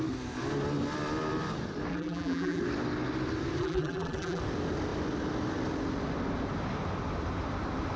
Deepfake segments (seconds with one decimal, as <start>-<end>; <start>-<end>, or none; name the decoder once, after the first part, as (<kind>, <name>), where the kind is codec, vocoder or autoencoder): 1.9-2.6 (vocoder, BigVGAN v2); 3.6-4.4